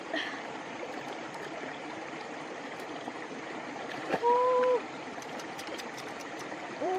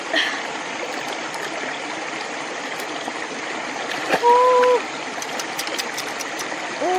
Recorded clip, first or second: second